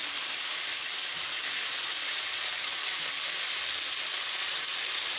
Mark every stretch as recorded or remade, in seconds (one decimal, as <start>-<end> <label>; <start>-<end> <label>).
0.0-3.1 remade; 3.1-4.4 recorded; 4.4-5.2 remade